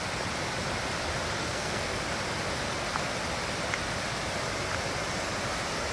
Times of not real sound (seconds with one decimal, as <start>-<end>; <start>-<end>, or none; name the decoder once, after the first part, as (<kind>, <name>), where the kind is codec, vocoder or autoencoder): 1.4-2.0 (codec, SNAC)